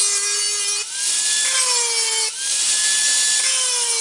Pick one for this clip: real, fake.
real